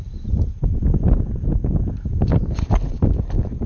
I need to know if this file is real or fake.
fake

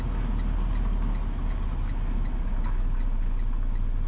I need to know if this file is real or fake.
real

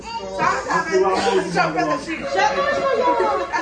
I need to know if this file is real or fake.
real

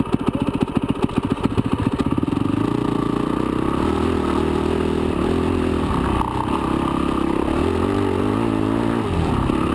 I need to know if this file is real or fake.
real